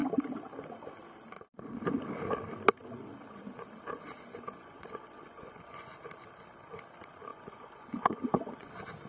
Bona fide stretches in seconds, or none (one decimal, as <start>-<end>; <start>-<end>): 0.0-4.6; 5.9-7.3; 8.7-9.1